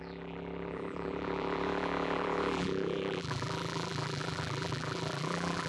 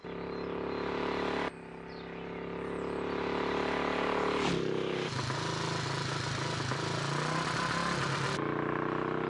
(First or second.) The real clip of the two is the second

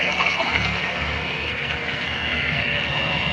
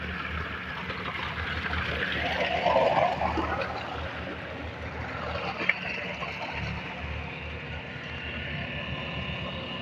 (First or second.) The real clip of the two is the second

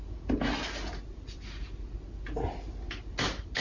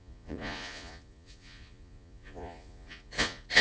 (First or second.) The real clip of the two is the first